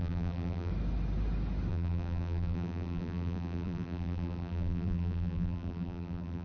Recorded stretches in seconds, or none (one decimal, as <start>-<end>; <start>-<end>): 0.7-1.7